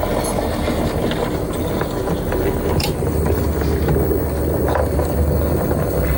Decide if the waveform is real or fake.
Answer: real